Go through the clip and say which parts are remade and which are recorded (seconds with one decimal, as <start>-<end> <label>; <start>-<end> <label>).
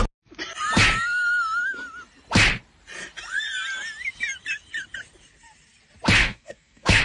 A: 0.0-6.2 recorded; 6.2-7.0 remade